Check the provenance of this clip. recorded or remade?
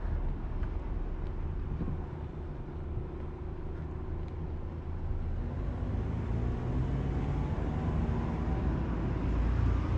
recorded